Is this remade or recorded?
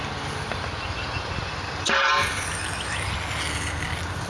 recorded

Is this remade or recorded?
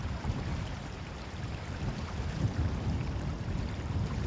remade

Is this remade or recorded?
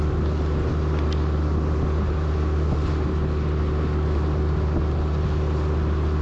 recorded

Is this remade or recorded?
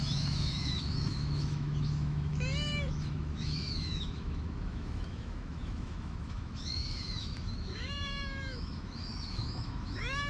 remade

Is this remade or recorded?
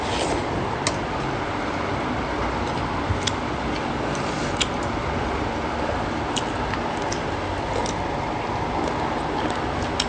recorded